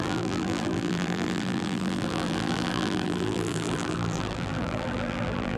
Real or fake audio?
fake